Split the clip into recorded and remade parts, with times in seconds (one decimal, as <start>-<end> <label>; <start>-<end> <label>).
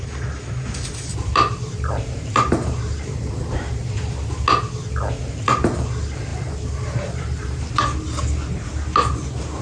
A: 0.0-1.1 recorded; 1.1-3.4 remade; 3.4-6.3 recorded; 6.3-7.8 remade; 7.8-9.6 recorded